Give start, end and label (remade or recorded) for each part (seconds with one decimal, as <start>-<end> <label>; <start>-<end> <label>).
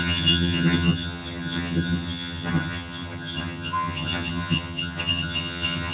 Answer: 0.0-5.9 remade